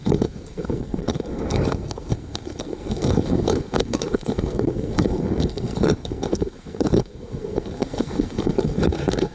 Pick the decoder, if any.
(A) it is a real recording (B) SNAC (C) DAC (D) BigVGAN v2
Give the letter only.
B